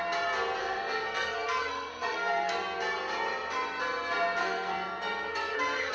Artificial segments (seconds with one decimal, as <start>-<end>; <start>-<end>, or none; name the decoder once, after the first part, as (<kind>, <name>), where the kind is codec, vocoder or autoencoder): 0.6-2.5 (codec, SNAC); 4.4-5.9